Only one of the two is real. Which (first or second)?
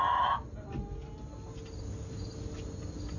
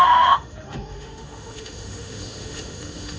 first